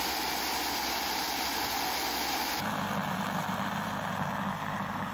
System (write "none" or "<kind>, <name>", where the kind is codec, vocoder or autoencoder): none